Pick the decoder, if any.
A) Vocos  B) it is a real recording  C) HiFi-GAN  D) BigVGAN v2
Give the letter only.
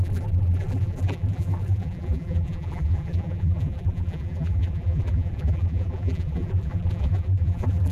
D